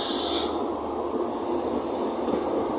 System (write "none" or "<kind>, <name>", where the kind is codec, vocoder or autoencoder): none